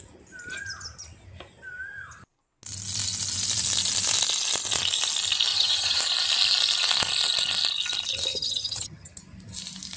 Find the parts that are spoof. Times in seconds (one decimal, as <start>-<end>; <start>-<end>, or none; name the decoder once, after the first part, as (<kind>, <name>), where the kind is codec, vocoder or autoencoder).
5.5-6.0 (vocoder, HiFi-GAN); 8.3-9.2